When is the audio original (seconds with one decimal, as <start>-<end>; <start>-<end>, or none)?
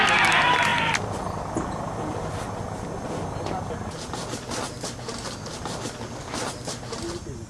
0.0-7.5